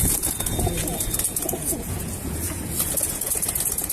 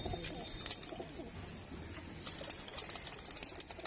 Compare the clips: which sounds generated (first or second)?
first